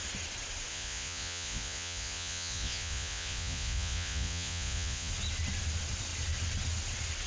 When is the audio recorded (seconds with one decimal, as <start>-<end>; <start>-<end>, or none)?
0.0-0.7; 5.1-7.3